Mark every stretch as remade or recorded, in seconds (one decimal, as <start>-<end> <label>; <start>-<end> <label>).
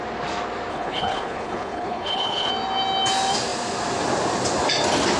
0.0-0.7 recorded; 0.7-2.5 remade; 2.5-5.2 recorded